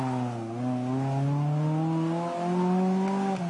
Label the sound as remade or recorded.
recorded